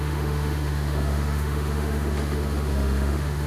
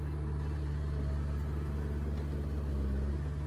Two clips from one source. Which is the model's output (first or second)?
first